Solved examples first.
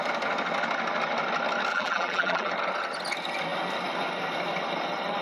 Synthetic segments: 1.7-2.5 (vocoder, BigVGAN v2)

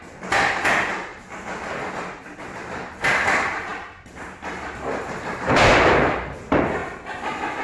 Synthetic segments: 0.0-1.1 (vocoder, BigVGAN v2); 2.2-7.6

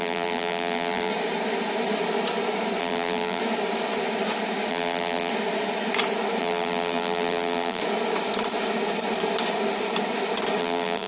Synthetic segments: 0.0-1.1 (vocoder, BigVGAN v2); 2.8-3.4; 4.7-5.3; 6.4-7.8; 10.6-11.1

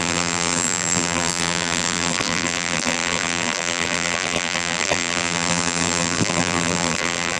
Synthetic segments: 0.0-7.4 (vocoder, BigVGAN v2)

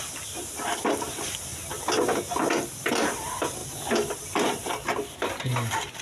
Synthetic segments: 0.0-1.5 (vocoder, BigVGAN v2); 2.6-3.6; 5.3-6.0

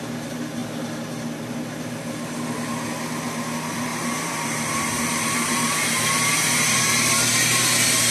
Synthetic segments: 3.9-8.1 (vocoder, BigVGAN v2)